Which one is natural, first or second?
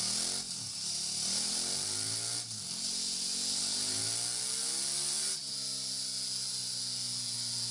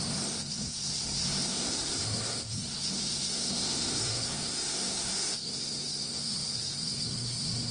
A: first